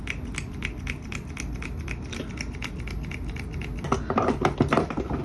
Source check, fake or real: real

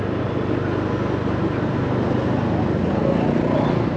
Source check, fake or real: real